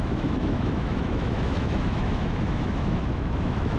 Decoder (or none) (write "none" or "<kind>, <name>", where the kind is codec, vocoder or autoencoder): autoencoder, DAC-VAE